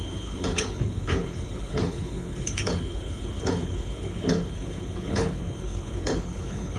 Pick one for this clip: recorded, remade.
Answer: remade